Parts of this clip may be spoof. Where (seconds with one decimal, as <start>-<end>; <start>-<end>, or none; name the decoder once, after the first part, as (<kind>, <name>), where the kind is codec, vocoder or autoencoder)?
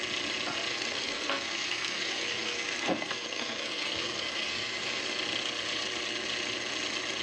0.7-5.0 (codec, SNAC)